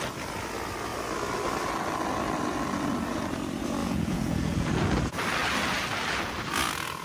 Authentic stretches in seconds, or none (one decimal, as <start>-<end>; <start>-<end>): 0.0-3.8; 4.7-7.0